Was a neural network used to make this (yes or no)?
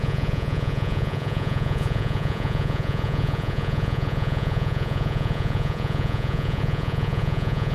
yes